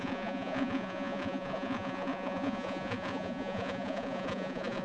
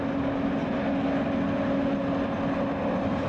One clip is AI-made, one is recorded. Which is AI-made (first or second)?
first